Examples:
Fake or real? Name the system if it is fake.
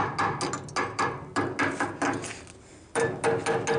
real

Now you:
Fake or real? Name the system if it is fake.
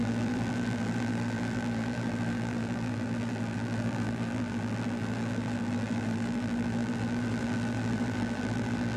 fake, vocoder, BigVGAN v2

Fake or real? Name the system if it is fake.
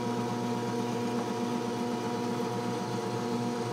real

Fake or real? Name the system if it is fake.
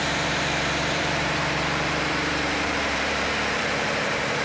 fake, vocoder, BigVGAN v2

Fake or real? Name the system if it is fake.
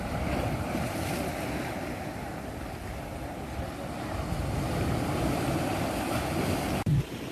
real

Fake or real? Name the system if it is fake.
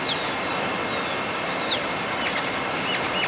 fake, vocoder, BigVGAN v2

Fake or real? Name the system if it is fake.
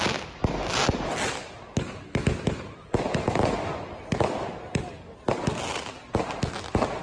real